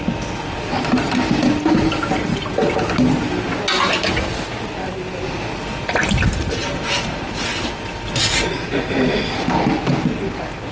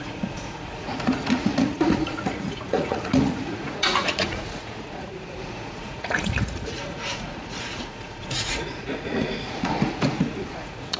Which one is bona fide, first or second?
first